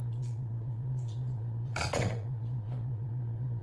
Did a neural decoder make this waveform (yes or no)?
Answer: yes